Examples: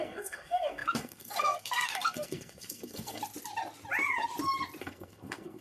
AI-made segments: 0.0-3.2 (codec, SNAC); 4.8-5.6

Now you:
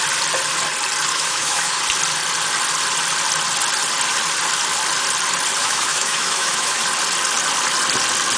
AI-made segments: 1.1-1.8 (autoencoder, DAC-VAE); 5.6-6.8

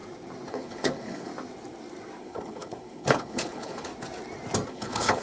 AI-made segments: 0.5-1.3 (codec, HILCodec); 2.2-3.9; 4.7-5.2

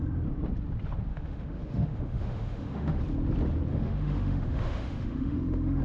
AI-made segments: 1.1-3.0 (autoencoder, DAC-VAE); 3.7-5.8

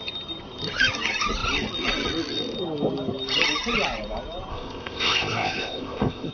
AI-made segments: 4.5-6.3 (codec, ZipCodec)

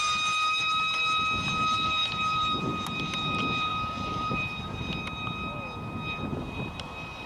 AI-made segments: 3.7-4.6 (vocoder, BigVGAN v2); 6.3-7.3

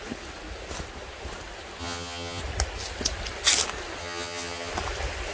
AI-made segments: 1.8-2.4 (vocoder, HiFi-GAN); 4.0-4.7